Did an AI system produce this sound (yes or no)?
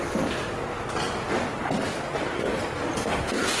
no